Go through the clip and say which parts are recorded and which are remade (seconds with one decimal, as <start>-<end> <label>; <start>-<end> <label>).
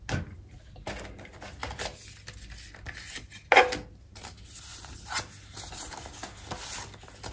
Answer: 0.0-7.3 recorded